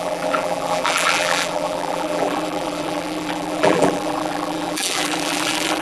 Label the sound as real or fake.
fake